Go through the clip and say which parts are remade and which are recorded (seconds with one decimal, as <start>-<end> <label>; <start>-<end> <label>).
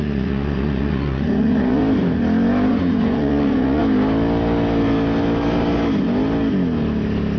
0.0-1.8 remade; 1.8-2.7 recorded; 2.7-3.8 remade; 3.8-7.4 recorded